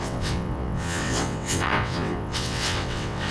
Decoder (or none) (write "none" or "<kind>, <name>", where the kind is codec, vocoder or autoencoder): vocoder, WaveNeXt